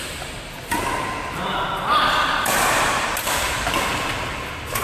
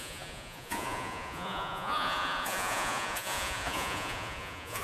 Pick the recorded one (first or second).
first